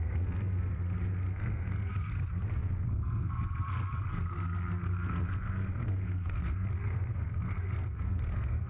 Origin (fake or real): fake